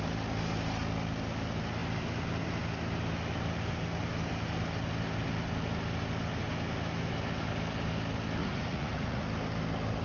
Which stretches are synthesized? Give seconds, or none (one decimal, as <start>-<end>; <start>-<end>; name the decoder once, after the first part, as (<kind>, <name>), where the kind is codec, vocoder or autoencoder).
8.4-9.2 (vocoder, Vocos)